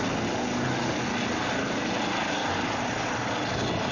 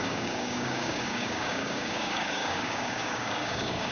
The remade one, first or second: second